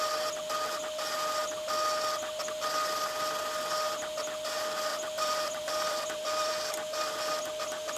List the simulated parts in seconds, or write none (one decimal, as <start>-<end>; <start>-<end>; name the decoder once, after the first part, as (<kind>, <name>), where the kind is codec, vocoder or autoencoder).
4.9-6.5 (vocoder, BigVGAN v2)